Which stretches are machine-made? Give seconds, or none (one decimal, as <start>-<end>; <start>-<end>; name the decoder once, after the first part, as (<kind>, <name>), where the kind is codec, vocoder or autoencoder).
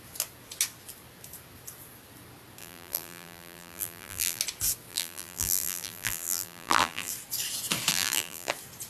2.6-4.4 (vocoder, BigVGAN v2); 4.9-7.1; 7.9-8.5